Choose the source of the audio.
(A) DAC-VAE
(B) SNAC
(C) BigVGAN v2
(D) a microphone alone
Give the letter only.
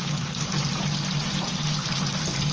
D